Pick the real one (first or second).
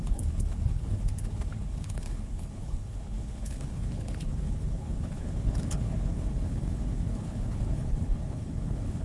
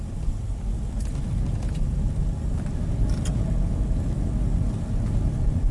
second